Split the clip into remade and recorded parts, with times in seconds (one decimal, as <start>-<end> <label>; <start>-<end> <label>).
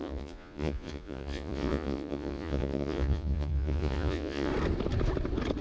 0.0-4.5 remade; 4.5-5.6 recorded